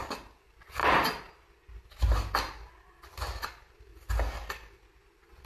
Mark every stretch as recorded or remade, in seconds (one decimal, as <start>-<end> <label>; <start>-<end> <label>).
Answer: 0.0-5.5 recorded